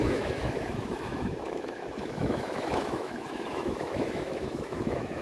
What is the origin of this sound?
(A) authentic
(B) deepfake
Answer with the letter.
B